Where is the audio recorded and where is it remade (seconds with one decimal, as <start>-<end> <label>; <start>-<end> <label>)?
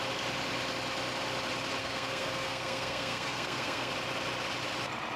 0.0-1.8 recorded; 1.8-3.9 remade; 3.9-5.2 recorded